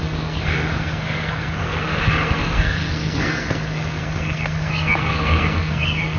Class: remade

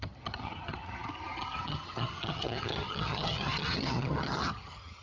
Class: remade